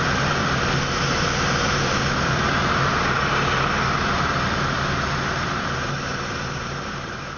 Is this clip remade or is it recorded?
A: remade